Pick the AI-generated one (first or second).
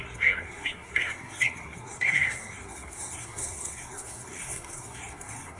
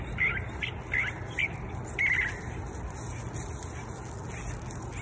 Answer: first